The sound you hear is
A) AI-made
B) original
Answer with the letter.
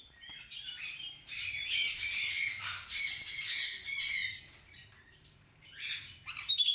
A